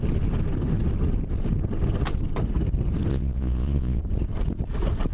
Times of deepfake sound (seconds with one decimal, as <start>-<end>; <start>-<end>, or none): 3.1-4.0